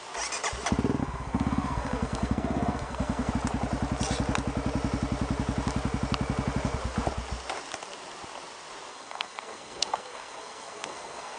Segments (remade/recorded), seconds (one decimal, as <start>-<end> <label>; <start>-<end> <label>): 0.0-1.0 recorded; 1.0-3.3 remade; 3.3-8.9 recorded; 8.9-11.4 remade